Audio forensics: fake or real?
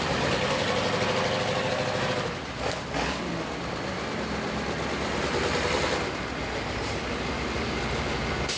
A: real